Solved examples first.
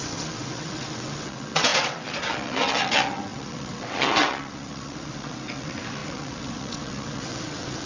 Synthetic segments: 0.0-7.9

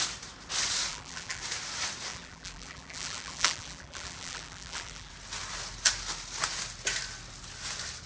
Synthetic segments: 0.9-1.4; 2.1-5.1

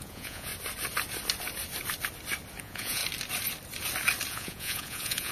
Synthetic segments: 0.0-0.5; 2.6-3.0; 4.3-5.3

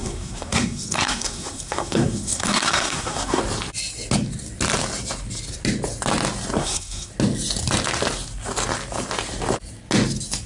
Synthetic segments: 0.0-3.4; 6.6-7.1

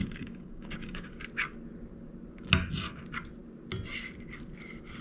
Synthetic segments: 0.0-1.2

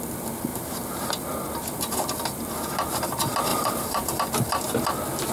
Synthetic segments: 0.5-1.1; 3.5-4.2